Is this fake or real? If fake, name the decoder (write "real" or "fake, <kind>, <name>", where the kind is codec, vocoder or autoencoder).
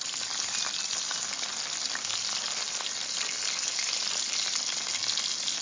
real